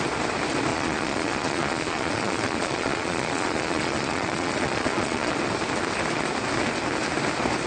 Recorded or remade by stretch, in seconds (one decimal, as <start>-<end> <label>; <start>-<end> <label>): 0.0-0.7 recorded; 0.7-5.3 remade; 5.3-7.7 recorded